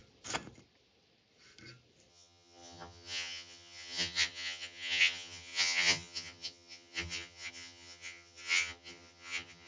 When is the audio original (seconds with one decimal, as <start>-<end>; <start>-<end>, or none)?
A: 0.0-2.1